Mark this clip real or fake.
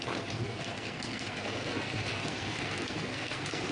fake